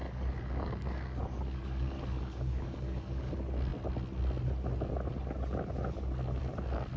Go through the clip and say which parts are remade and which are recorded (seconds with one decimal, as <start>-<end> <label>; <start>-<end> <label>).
0.0-3.3 remade; 3.3-7.0 recorded